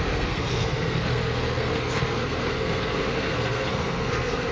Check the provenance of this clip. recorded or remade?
remade